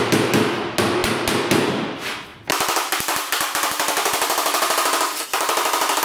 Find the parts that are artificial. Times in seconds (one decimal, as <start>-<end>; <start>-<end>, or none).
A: 2.3-6.0